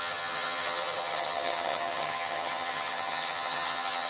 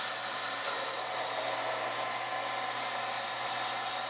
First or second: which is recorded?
second